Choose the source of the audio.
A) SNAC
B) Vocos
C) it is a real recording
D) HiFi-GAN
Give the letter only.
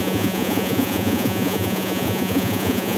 B